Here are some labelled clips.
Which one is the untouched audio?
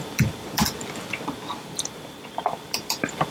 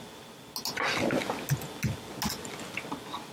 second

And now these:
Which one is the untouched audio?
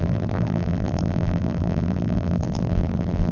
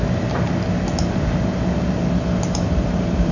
second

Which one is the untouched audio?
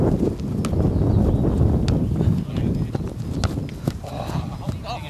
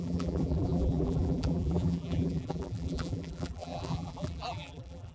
first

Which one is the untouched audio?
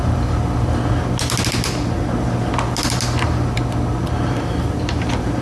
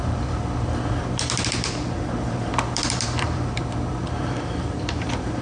first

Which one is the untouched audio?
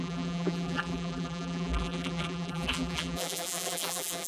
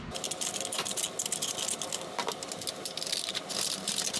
second